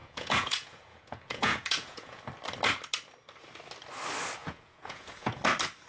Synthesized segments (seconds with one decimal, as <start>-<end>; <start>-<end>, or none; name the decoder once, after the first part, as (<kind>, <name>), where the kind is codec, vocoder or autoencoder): 0.0-2.2 (vocoder, Vocos); 4.4-5.4